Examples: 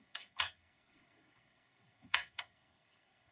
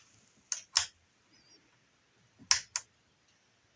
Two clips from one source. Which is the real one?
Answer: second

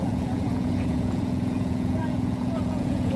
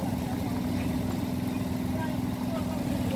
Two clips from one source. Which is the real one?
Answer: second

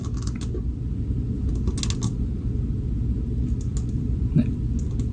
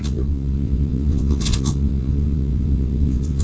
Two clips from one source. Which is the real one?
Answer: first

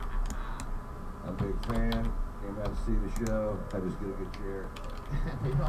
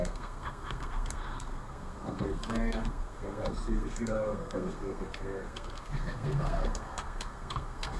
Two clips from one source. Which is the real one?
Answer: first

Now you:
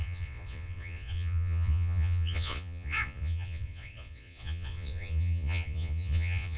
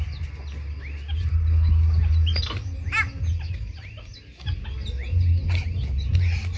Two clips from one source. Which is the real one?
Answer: second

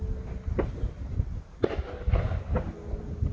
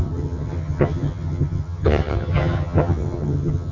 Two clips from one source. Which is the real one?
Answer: first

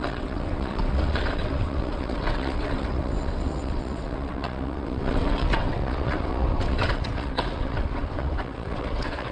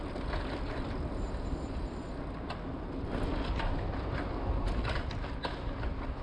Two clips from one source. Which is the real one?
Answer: second